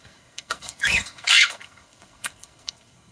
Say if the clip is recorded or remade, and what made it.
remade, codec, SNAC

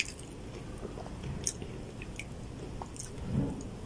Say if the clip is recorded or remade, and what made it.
recorded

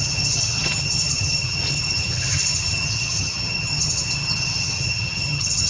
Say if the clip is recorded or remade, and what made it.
remade, vocoder, HiFi-GAN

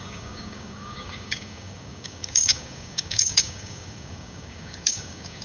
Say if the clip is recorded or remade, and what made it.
remade, codec, DAC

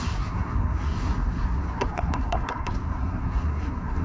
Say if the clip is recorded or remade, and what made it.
remade, codec, SNAC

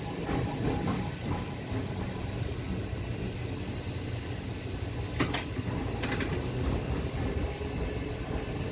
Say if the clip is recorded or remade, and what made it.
recorded